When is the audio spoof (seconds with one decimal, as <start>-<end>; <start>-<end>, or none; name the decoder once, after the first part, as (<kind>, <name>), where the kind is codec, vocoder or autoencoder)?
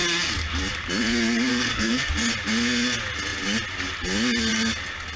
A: 1.5-2.1 (codec, SNAC)